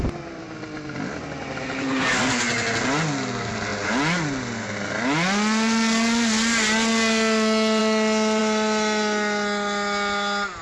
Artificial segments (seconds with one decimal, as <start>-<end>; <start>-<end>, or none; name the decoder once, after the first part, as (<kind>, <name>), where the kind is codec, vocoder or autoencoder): none